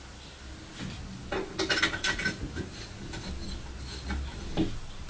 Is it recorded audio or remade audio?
recorded